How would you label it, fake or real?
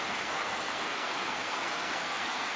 fake